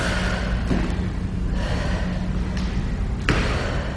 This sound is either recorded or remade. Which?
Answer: recorded